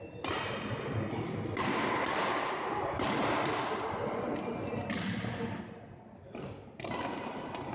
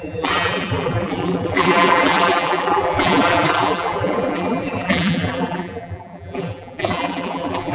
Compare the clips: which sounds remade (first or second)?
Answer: second